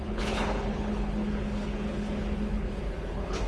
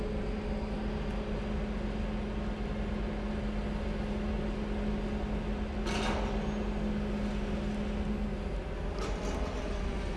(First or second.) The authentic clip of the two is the second